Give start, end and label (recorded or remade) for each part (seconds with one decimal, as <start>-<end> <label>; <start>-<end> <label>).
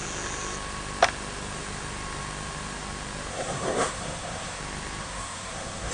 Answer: 0.0-3.3 recorded; 3.3-4.6 remade; 4.6-5.0 recorded; 5.0-5.9 remade